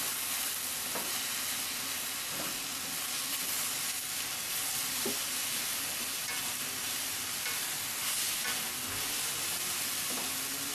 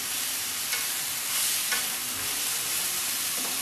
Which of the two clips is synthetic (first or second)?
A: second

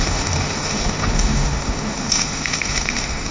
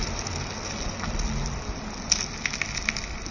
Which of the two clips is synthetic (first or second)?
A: first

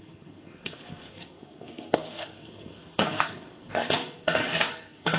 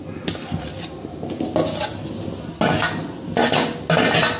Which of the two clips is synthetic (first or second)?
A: first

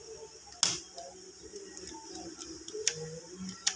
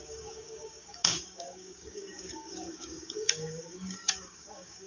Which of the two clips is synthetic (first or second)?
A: second